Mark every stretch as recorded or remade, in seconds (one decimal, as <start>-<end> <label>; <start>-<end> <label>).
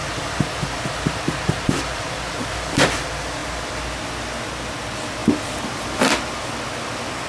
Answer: 0.0-3.0 remade; 3.0-7.3 recorded